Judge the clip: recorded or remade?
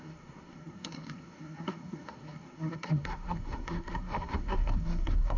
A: remade